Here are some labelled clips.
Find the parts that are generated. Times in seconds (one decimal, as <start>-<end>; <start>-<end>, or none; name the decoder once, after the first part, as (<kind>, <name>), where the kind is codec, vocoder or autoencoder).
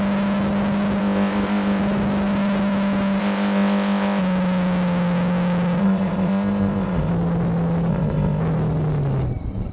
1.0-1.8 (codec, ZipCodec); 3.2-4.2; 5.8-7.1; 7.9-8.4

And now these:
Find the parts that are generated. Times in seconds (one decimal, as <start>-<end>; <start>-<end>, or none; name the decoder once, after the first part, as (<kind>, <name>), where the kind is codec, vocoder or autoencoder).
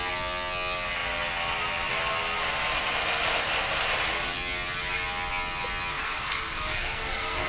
5.9-7.5 (codec, SNAC)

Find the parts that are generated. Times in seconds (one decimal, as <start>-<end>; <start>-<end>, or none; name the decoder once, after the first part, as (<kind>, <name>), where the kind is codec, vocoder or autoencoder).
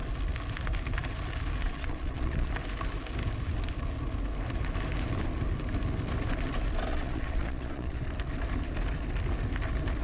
1.6-2.5 (vocoder, Vocos); 6.9-8.0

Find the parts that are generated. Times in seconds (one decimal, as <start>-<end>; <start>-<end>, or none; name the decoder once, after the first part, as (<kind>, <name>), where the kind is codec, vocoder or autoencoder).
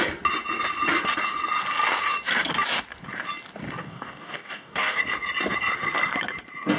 3.8-5.0 (codec, DAC)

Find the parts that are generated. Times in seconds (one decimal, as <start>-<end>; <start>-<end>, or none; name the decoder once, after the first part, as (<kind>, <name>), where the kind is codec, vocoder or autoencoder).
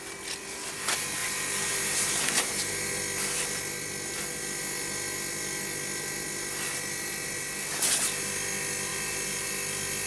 1.2-3.0 (vocoder, BigVGAN v2); 8.9-9.5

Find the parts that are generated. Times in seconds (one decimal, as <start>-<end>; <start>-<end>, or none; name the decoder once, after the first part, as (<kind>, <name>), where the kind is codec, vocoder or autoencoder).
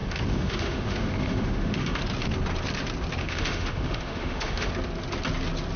0.0-2.0 (autoencoder, DAC-VAE); 3.2-4.7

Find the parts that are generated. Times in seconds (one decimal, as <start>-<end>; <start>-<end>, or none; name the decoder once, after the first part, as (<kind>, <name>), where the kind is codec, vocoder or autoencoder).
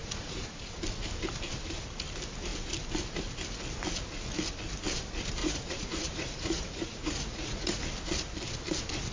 0.0-0.6 (vocoder, Vocos); 5.4-7.8